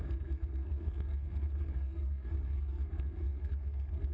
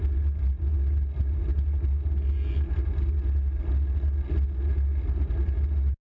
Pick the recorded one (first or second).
second